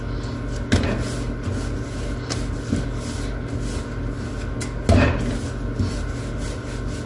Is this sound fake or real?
real